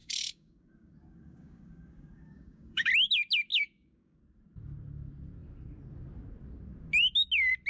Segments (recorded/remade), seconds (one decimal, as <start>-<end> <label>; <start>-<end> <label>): 0.0-2.9 remade; 2.9-3.5 recorded; 3.5-4.2 remade; 4.2-7.7 recorded